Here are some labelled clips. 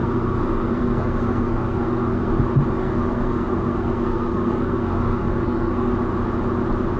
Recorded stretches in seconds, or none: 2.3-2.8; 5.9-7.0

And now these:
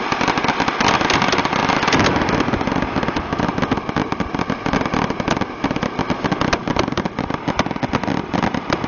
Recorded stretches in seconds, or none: 0.0-8.9

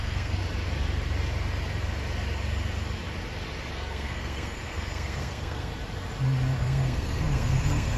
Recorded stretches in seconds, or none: 0.4-3.7; 5.7-6.6

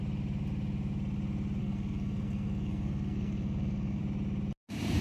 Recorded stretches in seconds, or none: 0.0-1.6; 4.0-5.0

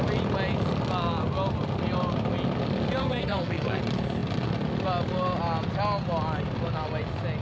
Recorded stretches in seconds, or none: 0.0-3.0; 3.8-7.4

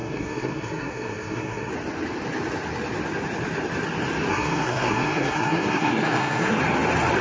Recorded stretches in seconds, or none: 1.7-4.3; 6.6-7.2

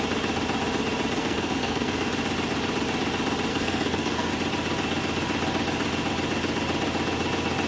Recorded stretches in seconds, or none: 0.0-1.2; 2.1-3.5; 4.3-7.7